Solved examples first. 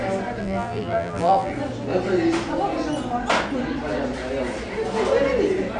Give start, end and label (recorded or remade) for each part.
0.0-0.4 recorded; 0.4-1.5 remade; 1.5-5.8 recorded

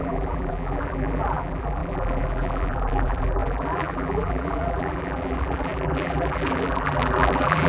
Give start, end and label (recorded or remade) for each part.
0.0-7.7 remade

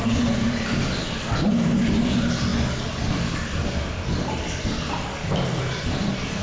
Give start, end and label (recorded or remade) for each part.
0.0-6.4 recorded

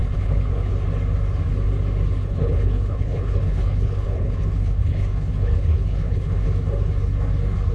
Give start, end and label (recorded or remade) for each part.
0.0-0.7 remade; 0.7-2.2 recorded; 2.2-6.5 remade; 6.5-7.7 recorded

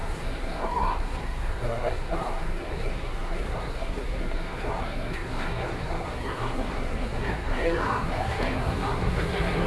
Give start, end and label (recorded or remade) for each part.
0.0-9.7 remade